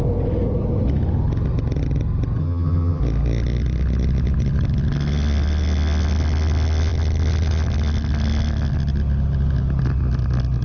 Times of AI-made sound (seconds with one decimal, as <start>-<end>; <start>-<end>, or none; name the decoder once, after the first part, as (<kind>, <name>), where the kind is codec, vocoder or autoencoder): 2.4-3.0 (vocoder, HiFi-GAN)